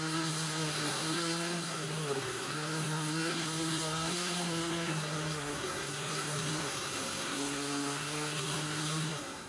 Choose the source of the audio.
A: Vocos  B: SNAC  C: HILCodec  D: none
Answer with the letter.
B